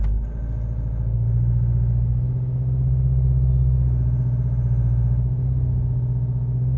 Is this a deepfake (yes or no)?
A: no